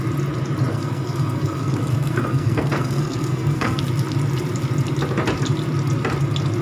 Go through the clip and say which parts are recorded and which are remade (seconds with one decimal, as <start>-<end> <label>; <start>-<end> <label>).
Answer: 0.0-0.7 recorded; 0.7-3.8 remade; 3.8-6.6 recorded